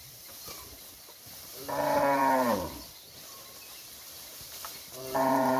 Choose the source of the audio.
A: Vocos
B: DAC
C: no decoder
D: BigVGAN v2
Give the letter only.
D